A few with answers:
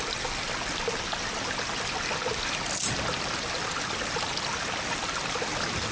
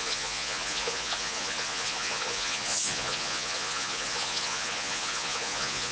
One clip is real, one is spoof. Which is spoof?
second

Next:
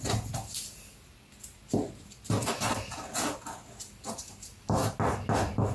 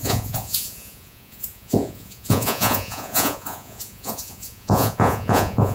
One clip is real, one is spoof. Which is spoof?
second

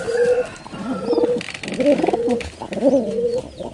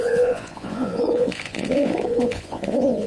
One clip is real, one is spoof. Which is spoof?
second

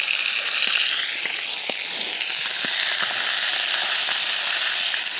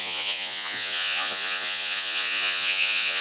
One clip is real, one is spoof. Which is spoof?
second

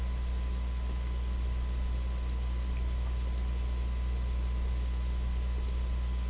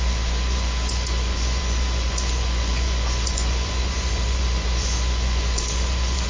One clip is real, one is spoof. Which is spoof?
second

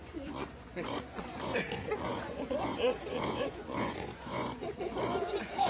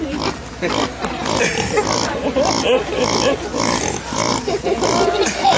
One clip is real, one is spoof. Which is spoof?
first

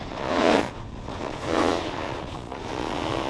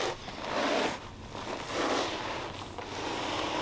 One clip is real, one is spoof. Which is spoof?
first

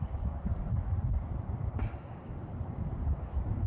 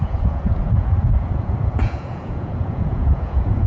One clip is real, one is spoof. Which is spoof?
second